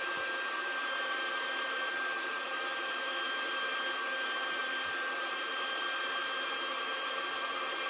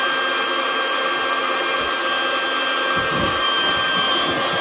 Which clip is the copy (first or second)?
first